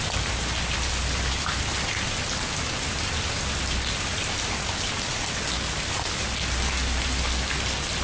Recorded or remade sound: recorded